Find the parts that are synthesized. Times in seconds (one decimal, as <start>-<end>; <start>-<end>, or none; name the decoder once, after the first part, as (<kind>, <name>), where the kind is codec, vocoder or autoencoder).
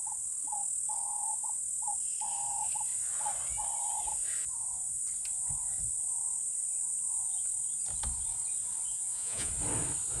8.9-9.5 (vocoder, Vocos)